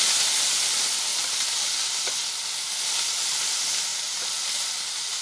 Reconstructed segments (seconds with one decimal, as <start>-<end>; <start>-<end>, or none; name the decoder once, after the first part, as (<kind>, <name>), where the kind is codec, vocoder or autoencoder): 1.1-1.8 (vocoder, BigVGAN v2)